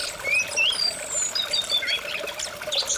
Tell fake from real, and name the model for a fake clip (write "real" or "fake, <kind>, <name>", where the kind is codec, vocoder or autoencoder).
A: real